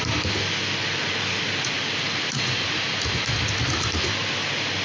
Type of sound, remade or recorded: recorded